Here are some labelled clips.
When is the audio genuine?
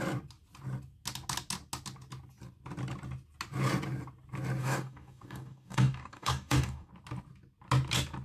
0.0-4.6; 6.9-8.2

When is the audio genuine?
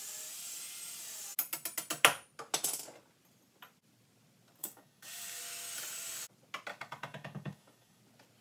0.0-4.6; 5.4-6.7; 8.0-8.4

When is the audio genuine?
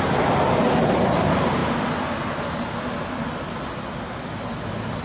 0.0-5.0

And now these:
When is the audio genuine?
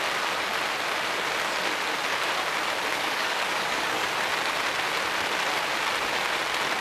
0.0-2.9; 4.1-6.8